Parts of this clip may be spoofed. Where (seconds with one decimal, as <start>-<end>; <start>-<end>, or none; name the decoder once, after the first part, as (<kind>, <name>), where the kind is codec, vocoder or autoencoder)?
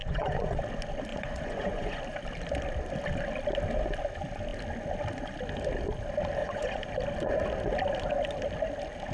0.0-0.6 (vocoder, Vocos); 1.1-2.0; 6.4-6.9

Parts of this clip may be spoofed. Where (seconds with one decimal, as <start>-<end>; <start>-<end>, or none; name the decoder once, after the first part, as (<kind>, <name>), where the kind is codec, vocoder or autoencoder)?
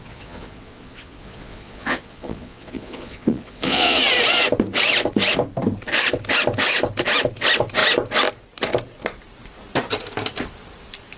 0.0-4.0 (vocoder, Vocos)